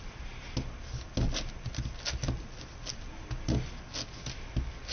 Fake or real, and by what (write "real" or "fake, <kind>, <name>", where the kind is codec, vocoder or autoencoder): real